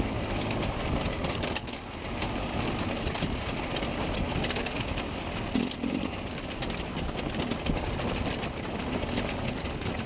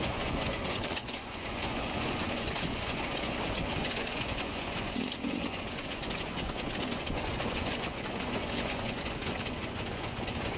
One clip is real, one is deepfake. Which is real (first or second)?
first